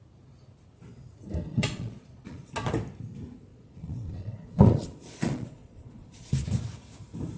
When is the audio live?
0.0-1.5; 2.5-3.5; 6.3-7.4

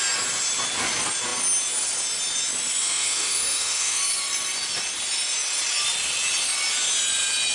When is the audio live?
0.0-2.8; 4.0-7.5

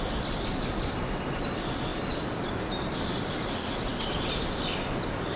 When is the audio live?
0.0-1.9; 2.9-5.4

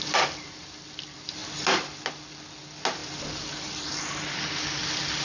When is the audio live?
0.0-3.0; 3.9-5.2

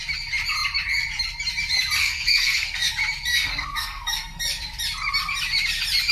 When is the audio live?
0.0-2.0; 2.9-3.3; 4.4-6.1

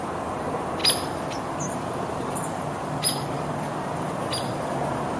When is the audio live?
0.0-5.2

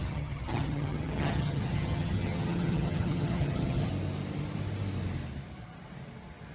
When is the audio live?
3.9-6.5